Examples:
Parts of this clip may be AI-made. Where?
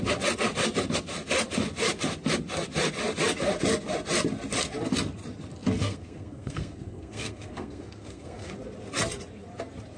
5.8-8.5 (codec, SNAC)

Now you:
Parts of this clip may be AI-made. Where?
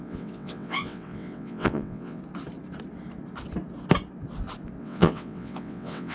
0.0-2.2 (vocoder, WaveNeXt); 4.8-6.1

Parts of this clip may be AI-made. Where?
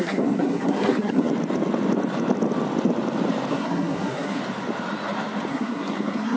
0.0-1.3 (codec, SNAC); 3.5-4.4; 5.5-6.4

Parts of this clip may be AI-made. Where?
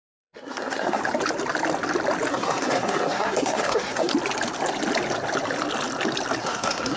0.0-1.0 (codec, SNAC); 2.3-4.1; 6.4-7.0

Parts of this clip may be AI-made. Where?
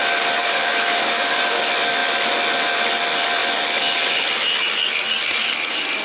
0.4-1.6 (codec, DAC)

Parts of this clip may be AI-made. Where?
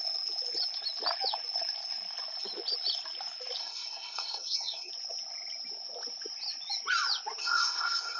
3.6-4.9 (codec, SNAC); 7.4-8.2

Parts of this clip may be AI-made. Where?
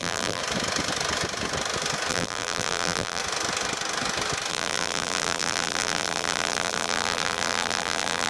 0.0-0.4 (vocoder, BigVGAN v2); 2.1-3.2; 4.5-8.3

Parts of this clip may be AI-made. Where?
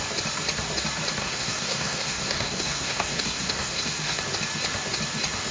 1.2-4.2 (codec, SNAC)